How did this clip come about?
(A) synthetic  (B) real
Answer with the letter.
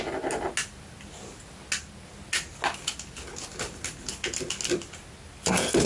B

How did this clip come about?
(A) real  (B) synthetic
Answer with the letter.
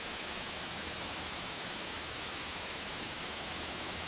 B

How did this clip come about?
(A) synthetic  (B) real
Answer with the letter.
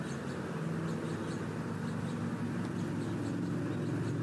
B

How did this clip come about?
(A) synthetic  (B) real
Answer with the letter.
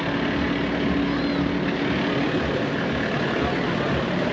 B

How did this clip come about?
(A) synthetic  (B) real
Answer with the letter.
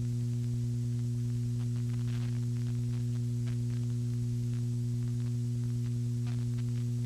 B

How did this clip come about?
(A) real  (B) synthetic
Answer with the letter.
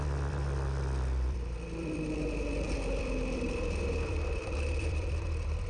B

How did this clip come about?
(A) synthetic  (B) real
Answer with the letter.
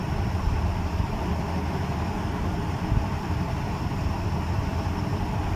A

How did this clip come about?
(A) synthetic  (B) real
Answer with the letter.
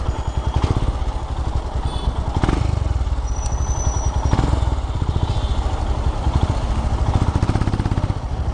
B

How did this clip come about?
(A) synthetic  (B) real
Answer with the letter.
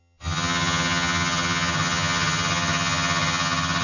A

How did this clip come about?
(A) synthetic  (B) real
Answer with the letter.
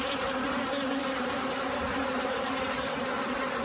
A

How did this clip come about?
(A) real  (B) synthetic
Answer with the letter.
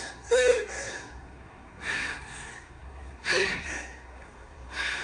B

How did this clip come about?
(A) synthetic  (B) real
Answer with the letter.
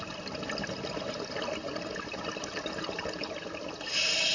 B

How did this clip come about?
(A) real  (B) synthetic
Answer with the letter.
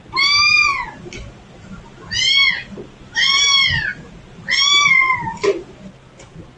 A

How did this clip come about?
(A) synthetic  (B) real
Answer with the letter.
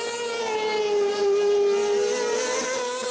B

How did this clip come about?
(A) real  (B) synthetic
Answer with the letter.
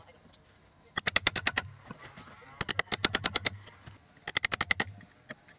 A